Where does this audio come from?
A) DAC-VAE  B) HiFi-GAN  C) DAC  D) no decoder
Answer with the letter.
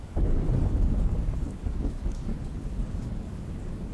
C